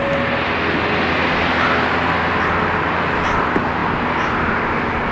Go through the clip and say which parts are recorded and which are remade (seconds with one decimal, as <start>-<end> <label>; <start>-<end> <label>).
0.0-5.1 recorded